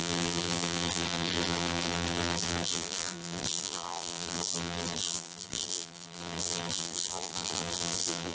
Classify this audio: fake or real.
fake